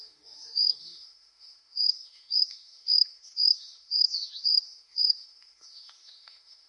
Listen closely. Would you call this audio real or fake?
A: fake